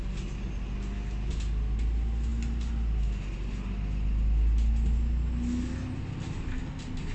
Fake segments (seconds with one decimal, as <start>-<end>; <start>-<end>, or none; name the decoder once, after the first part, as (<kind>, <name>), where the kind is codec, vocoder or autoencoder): none